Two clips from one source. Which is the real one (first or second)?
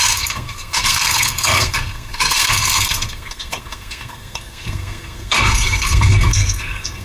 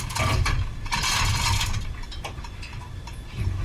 second